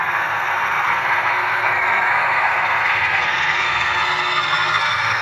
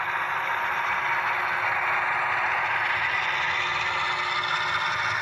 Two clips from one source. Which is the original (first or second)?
second